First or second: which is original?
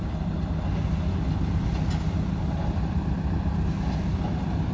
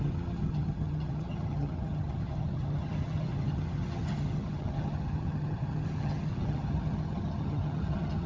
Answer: first